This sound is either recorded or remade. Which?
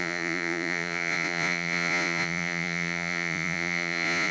remade